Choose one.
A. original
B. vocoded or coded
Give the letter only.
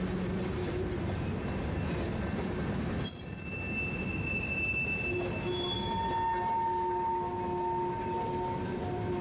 A